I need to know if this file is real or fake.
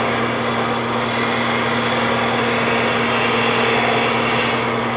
real